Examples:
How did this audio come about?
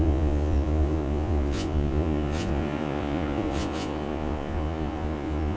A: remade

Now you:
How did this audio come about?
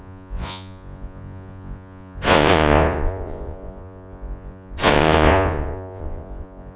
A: remade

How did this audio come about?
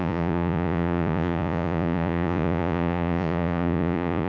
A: remade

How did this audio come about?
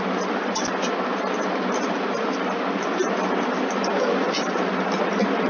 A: recorded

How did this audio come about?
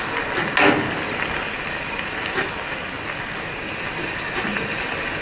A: recorded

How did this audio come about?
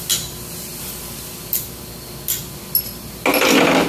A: recorded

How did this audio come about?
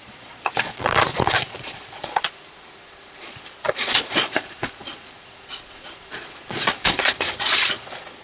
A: remade